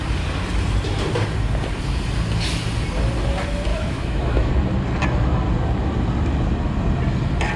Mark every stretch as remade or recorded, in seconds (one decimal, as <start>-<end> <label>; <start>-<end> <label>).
0.0-3.7 recorded; 3.7-4.5 remade; 4.5-7.6 recorded